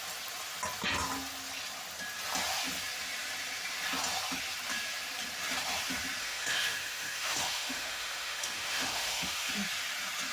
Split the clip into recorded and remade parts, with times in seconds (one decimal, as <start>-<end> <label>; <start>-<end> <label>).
0.0-6.2 recorded; 6.2-9.5 remade; 9.5-10.3 recorded